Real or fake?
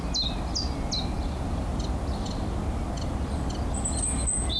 real